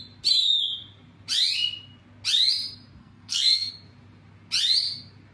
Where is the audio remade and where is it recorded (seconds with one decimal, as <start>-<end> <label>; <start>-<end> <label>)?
0.0-3.0 recorded; 3.0-3.7 remade; 3.7-5.3 recorded